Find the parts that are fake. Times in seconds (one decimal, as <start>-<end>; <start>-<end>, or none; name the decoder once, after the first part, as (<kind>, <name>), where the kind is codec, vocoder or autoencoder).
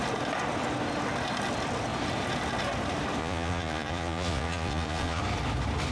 3.2-5.2 (vocoder, Vocos)